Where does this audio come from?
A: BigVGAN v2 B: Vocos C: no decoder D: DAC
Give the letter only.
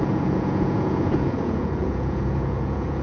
B